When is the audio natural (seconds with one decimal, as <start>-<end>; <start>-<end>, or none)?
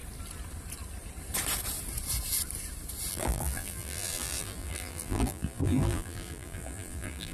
0.0-3.1